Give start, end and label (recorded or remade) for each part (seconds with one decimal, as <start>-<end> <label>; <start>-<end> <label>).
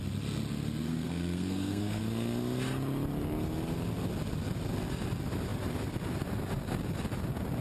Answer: 0.0-0.9 recorded; 0.9-2.0 remade; 2.0-7.6 recorded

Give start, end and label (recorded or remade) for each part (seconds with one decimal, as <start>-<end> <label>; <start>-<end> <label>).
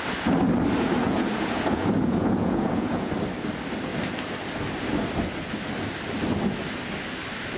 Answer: 0.0-1.0 recorded; 1.0-3.1 remade; 3.1-7.6 recorded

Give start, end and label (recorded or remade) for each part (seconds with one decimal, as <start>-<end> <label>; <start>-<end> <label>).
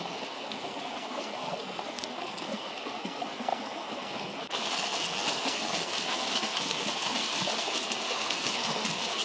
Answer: 0.0-9.2 remade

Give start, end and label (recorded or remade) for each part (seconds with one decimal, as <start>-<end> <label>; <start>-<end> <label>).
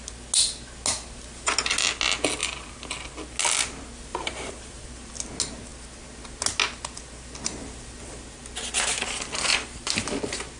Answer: 0.0-2.4 recorded; 2.4-2.9 remade; 2.9-4.1 recorded; 4.1-5.3 remade; 5.3-9.5 recorded; 9.5-10.0 remade; 10.0-10.6 recorded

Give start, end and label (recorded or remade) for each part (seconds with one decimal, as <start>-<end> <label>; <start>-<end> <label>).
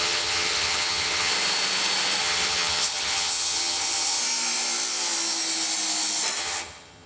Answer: 0.0-1.3 remade; 1.3-2.2 recorded; 2.2-4.2 remade; 4.2-6.4 recorded; 6.4-7.1 remade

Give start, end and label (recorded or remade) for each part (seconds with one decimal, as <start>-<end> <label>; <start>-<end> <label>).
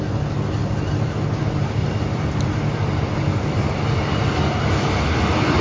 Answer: 0.0-0.6 recorded; 0.6-1.4 remade; 1.4-1.8 recorded; 1.8-4.4 remade; 4.4-5.6 recorded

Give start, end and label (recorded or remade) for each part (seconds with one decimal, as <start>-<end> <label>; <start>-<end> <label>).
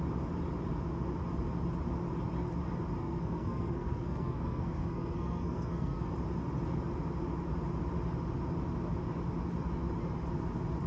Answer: 0.0-3.0 recorded; 3.0-6.1 remade; 6.1-10.9 recorded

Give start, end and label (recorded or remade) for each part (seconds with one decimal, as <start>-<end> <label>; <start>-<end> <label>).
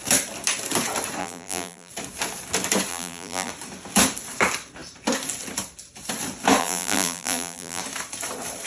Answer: 0.0-1.2 recorded; 1.2-1.9 remade; 1.9-2.9 recorded; 2.9-3.5 remade; 3.5-6.6 recorded; 6.6-7.8 remade; 7.8-8.7 recorded